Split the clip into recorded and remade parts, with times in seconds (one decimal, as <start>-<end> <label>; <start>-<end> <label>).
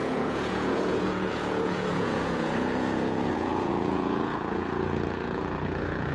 0.0-6.1 remade